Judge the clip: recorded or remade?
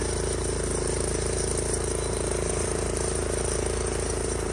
remade